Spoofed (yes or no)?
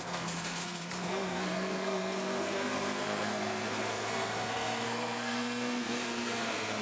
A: yes